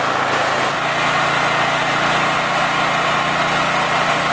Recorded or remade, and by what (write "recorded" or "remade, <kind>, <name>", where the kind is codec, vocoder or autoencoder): recorded